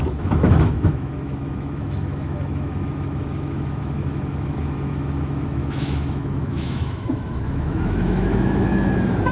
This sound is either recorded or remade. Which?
remade